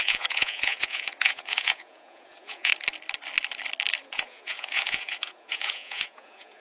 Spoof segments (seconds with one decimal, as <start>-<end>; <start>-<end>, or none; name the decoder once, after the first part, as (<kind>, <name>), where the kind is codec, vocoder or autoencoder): 0.0-2.7 (vocoder, Vocos); 4.0-6.6